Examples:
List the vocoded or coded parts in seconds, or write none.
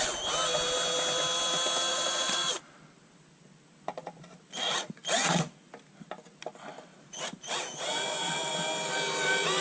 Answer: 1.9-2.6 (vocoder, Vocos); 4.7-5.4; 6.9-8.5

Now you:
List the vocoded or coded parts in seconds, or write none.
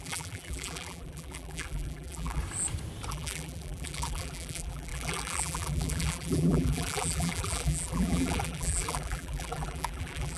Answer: 0.0-2.4 (vocoder, BigVGAN v2); 3.1-10.4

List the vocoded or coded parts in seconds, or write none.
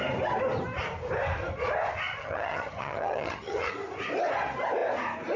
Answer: 2.2-3.7 (vocoder, HiFi-GAN)